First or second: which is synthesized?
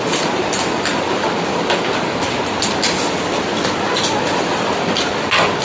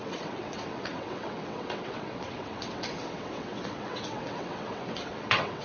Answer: second